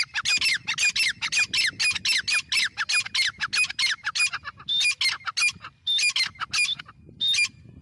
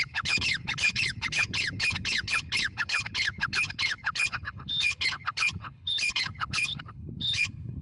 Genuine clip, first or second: first